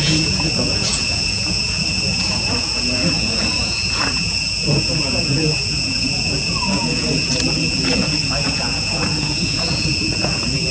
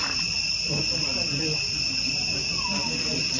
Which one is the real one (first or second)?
second